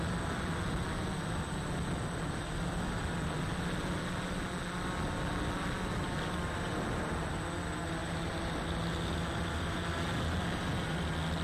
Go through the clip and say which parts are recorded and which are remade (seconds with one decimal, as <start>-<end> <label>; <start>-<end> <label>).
0.0-11.4 recorded